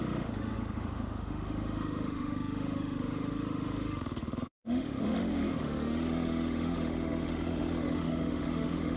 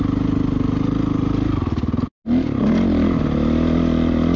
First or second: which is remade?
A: first